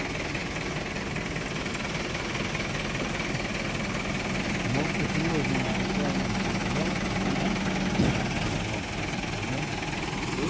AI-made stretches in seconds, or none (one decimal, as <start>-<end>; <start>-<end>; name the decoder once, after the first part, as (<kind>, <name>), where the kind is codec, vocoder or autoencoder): none

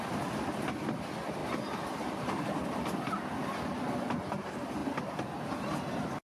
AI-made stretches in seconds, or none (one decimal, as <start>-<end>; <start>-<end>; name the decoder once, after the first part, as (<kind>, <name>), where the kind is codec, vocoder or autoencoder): none

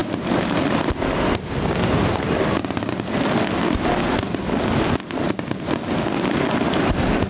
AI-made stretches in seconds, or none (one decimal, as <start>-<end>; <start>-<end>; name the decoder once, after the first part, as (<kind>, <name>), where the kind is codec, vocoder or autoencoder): none

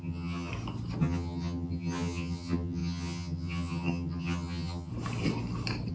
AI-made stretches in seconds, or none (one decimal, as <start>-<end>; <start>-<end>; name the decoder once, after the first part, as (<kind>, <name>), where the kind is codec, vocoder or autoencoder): 0.0-0.5 (vocoder, HiFi-GAN); 1.0-4.9

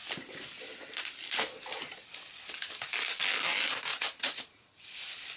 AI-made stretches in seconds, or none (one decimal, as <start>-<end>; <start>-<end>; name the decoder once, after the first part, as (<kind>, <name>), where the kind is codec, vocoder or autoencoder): 3.9-4.8 (vocoder, Vocos)

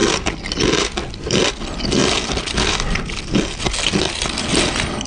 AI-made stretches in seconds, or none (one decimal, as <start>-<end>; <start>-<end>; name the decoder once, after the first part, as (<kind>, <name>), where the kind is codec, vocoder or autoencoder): none